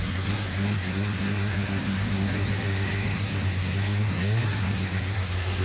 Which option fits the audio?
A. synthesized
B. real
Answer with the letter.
A